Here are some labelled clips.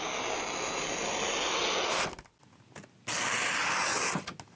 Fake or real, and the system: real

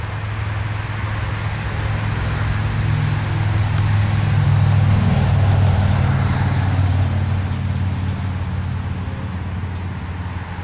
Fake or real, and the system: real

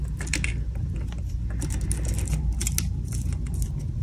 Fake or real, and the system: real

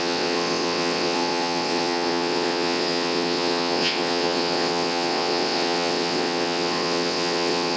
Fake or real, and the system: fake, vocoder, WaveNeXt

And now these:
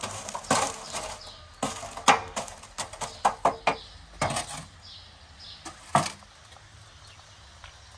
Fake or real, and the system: real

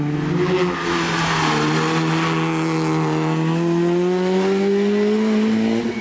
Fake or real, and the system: real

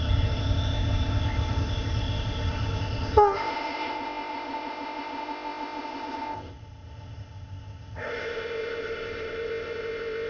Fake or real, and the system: fake, codec, ZipCodec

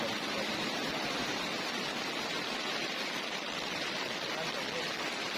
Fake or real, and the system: real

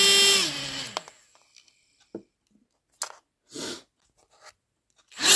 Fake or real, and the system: real